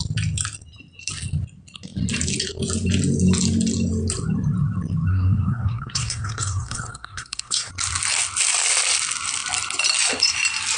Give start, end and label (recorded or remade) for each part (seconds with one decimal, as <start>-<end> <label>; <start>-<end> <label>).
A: 0.0-5.1 recorded; 5.1-7.7 remade; 7.7-10.8 recorded